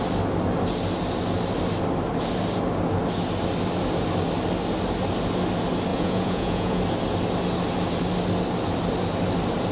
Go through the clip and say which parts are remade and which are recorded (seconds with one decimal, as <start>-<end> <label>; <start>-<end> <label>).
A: 0.0-5.9 recorded; 5.9-6.8 remade; 6.8-9.7 recorded